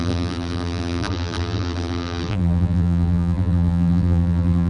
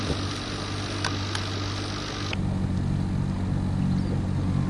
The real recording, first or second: second